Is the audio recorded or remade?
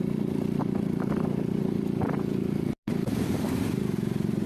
remade